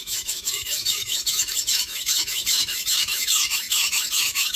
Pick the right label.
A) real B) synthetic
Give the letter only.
B